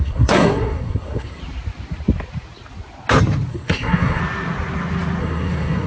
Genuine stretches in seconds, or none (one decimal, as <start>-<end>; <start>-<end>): 1.4-3.5; 4.2-5.2